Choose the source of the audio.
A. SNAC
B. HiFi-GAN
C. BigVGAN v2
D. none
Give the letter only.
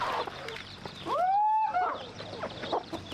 C